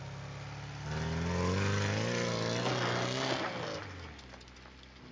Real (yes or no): yes